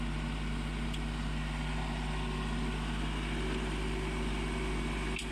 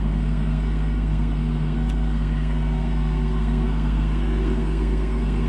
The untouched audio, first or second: first